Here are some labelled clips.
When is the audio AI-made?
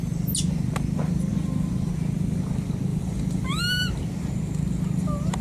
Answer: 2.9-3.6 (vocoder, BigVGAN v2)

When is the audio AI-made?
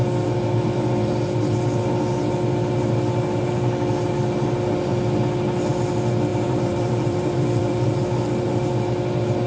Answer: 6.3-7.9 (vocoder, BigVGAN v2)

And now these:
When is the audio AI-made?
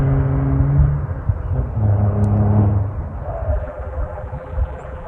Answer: 3.5-5.1 (vocoder, BigVGAN v2)